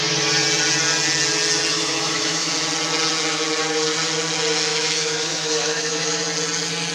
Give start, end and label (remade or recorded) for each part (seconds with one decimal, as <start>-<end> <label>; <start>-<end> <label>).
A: 0.0-1.7 recorded; 1.7-2.5 remade; 2.5-4.7 recorded; 4.7-6.2 remade; 6.2-6.9 recorded